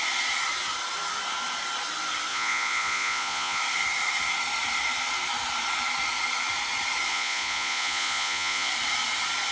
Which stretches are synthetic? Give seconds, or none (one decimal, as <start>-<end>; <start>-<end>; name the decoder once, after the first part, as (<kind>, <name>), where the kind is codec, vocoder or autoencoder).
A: 2.3-3.6 (vocoder, Vocos); 7.1-8.7